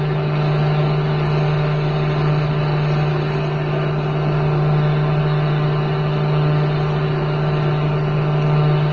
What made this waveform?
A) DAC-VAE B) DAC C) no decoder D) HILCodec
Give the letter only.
C